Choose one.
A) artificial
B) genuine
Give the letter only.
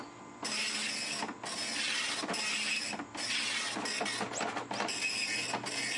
B